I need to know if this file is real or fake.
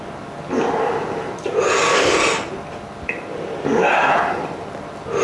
real